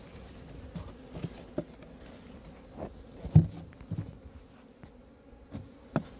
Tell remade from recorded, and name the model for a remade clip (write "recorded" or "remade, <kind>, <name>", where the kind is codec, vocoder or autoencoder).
recorded